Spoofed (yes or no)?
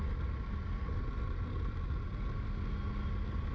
no